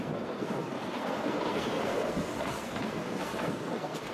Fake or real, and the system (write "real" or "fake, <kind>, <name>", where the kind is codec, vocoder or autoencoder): fake, codec, SNAC